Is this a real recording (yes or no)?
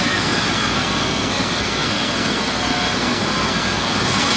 no